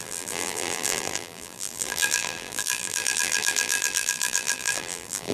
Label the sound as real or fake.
fake